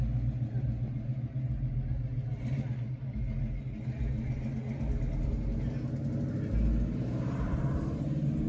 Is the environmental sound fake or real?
real